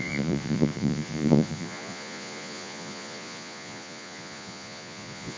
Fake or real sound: fake